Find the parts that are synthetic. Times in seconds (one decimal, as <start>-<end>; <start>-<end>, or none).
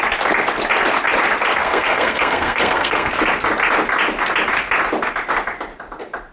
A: 1.6-3.1